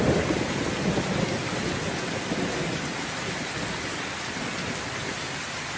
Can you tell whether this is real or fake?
real